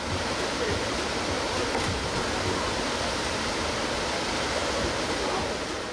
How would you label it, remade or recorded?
recorded